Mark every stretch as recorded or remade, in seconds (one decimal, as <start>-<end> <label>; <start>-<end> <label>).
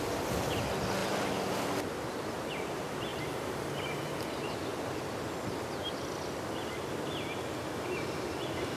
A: 0.0-3.1 recorded; 3.1-4.2 remade; 4.2-8.8 recorded